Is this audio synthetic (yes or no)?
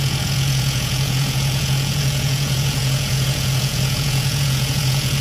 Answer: yes